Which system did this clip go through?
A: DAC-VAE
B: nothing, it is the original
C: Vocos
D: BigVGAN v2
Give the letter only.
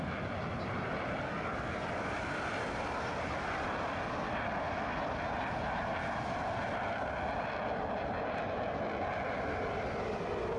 B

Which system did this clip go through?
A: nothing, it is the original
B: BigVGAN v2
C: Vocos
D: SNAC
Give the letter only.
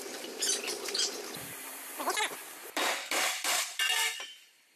B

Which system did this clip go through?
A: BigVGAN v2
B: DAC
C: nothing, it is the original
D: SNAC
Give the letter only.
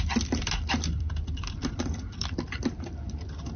A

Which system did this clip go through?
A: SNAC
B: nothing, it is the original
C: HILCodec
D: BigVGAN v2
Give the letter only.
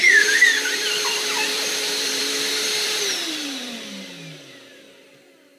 D